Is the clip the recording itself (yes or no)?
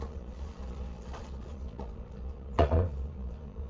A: no